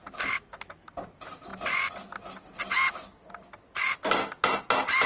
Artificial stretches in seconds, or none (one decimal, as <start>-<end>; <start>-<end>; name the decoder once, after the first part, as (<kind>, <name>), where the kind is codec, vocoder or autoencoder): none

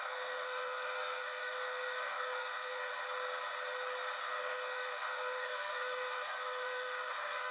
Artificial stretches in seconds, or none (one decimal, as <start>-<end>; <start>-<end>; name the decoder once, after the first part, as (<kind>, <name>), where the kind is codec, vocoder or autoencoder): 0.0-2.9 (codec, SNAC); 4.2-7.5

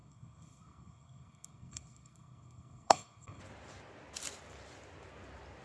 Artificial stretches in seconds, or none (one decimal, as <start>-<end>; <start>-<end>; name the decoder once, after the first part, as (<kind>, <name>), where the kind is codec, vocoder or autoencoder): 0.0-3.4 (codec, SNAC)

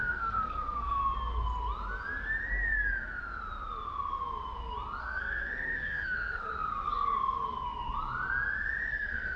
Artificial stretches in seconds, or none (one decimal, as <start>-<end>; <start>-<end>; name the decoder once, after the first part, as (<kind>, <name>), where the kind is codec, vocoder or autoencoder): 0.0-1.0 (codec, SNAC); 5.0-6.5; 8.9-9.4